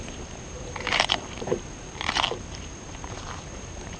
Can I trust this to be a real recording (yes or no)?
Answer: no